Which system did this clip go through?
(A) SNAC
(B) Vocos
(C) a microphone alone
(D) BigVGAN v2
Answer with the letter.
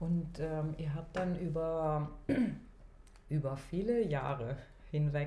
C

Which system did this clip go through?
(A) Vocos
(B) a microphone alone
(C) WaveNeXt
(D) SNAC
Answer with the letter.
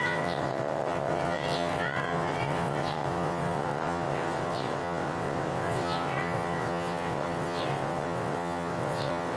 C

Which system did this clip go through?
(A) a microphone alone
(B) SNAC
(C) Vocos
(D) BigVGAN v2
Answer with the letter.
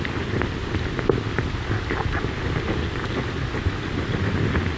A